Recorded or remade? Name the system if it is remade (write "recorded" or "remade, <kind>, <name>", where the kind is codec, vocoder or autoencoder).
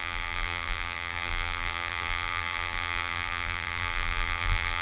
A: remade, vocoder, BigVGAN v2